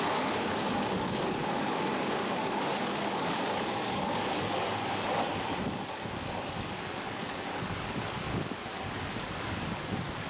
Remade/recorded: remade